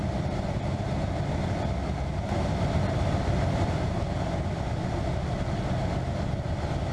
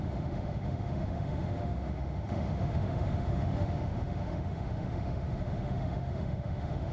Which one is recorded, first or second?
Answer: first